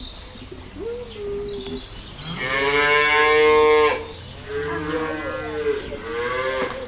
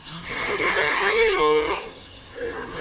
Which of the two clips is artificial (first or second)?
second